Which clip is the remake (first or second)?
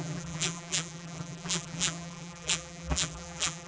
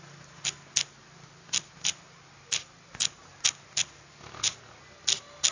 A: first